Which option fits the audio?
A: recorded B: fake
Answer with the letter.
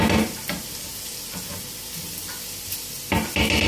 A